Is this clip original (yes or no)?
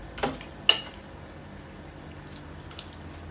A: yes